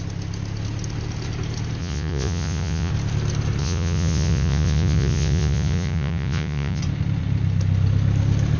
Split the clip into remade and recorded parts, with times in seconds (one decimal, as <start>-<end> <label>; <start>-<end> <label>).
0.0-1.8 recorded; 1.8-2.9 remade; 2.9-3.6 recorded; 3.6-6.8 remade; 6.8-8.6 recorded